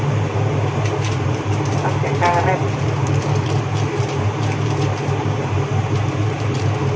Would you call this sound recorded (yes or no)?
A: no